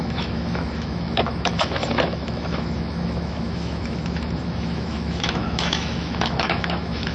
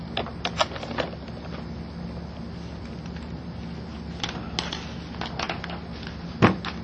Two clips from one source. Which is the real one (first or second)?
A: second